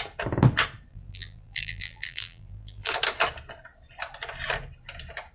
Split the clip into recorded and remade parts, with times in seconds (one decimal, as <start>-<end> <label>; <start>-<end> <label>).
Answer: 0.0-0.9 recorded; 0.9-2.9 remade; 2.9-5.3 recorded